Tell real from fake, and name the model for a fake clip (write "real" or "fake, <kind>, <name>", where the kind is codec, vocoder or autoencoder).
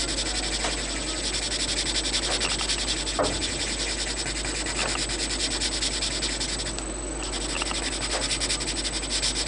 real